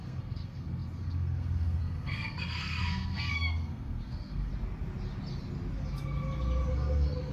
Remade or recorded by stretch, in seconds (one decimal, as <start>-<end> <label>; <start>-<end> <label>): 0.0-4.5 remade; 4.5-6.7 recorded; 6.7-7.3 remade